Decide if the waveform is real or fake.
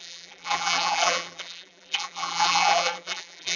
fake